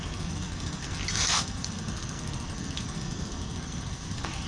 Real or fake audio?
fake